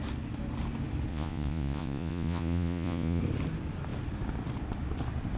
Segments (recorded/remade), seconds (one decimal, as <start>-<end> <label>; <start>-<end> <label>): 0.0-1.1 recorded; 1.1-3.2 remade; 3.2-5.4 recorded